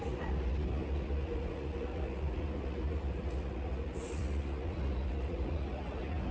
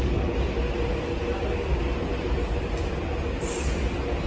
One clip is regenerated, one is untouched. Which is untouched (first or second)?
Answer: second